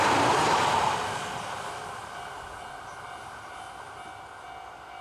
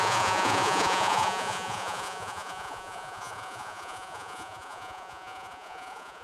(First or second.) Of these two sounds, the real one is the first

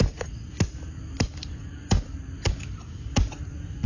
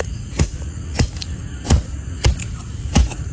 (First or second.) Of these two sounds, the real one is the first